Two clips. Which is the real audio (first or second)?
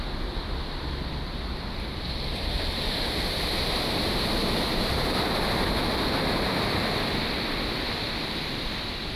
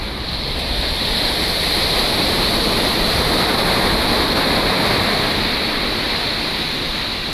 second